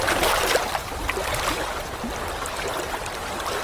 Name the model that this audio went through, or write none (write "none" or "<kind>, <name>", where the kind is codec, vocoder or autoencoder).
none